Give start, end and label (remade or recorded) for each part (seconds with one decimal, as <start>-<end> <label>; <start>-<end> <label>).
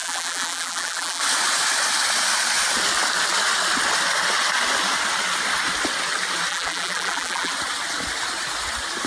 0.0-1.2 remade; 1.2-6.5 recorded; 6.5-7.5 remade; 7.5-9.1 recorded